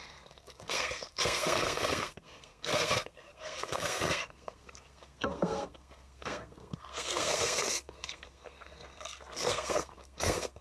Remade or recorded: remade